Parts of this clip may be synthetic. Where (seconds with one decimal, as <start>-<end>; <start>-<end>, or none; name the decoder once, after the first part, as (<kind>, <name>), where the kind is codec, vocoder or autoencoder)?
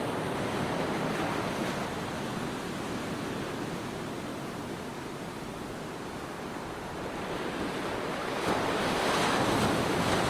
none